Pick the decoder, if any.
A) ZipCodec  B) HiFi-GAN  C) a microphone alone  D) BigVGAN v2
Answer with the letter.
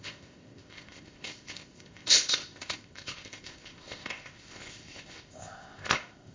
A